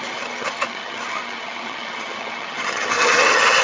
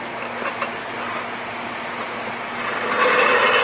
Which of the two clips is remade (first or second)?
first